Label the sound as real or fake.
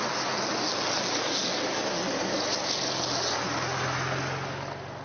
real